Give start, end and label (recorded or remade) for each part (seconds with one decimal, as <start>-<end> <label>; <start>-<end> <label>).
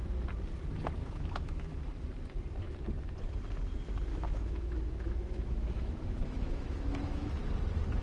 0.0-1.0 recorded; 1.0-1.9 remade; 1.9-4.1 recorded; 4.1-7.4 remade; 7.4-8.0 recorded